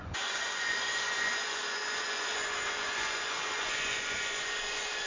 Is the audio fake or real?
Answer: fake